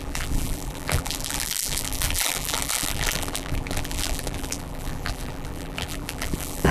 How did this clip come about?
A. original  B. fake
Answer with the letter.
B